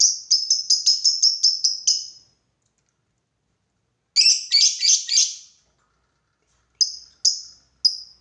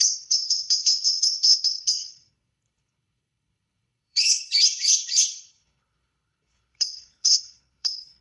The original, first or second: first